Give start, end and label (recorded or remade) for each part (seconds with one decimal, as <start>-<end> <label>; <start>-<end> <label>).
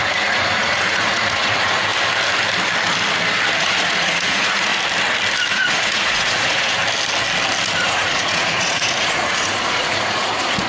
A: 0.0-1.9 remade; 1.9-3.6 recorded; 3.6-4.7 remade; 4.7-5.5 recorded; 5.5-6.8 remade; 6.8-7.8 recorded; 7.8-10.7 remade